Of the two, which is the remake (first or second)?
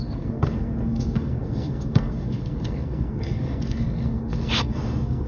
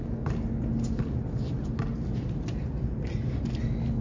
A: first